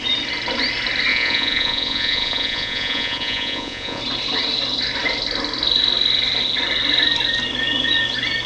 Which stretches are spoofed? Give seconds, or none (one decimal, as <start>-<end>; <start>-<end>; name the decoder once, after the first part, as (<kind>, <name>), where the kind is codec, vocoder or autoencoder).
1.1-4.0 (vocoder, Vocos)